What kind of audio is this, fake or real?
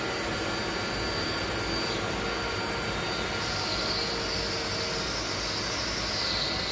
real